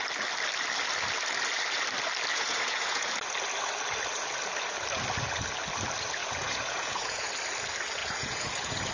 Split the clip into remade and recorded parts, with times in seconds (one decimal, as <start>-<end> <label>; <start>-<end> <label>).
0.0-2.3 recorded; 2.3-3.1 remade; 3.1-6.2 recorded; 6.2-7.3 remade; 7.3-8.0 recorded; 8.0-8.9 remade